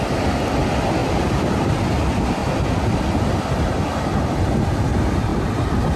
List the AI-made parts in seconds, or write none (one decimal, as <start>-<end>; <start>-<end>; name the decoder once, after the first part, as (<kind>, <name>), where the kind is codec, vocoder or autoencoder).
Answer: 1.0-1.8 (vocoder, BigVGAN v2)